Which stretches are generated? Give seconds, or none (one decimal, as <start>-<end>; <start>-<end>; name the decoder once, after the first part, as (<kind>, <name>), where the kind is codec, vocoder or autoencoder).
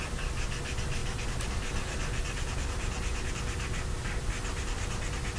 none